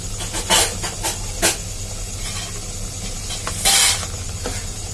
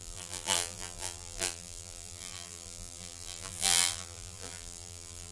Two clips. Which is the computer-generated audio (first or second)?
second